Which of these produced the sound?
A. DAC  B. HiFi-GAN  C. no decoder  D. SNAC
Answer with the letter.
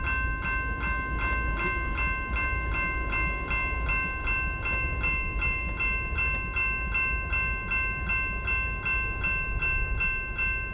C